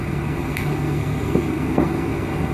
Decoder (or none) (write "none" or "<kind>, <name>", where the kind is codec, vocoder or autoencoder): codec, SNAC